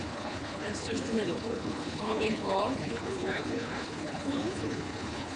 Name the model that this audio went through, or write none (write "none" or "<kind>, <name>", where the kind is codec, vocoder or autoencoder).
codec, HILCodec